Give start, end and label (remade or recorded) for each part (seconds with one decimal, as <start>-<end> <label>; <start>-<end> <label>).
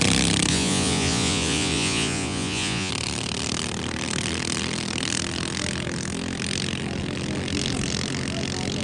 0.0-0.5 recorded; 0.5-2.9 remade; 2.9-8.8 recorded